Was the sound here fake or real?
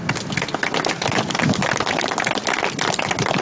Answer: real